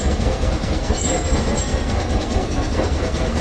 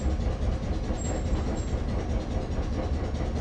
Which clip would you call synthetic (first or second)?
first